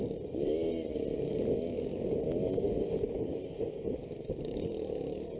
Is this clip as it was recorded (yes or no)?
yes